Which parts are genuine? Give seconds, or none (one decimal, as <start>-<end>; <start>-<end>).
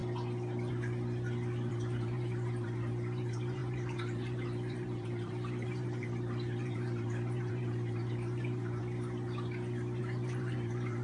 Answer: 0.0-1.7; 8.8-10.0